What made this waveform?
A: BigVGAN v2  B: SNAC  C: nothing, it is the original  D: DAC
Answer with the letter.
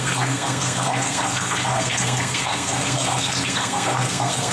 B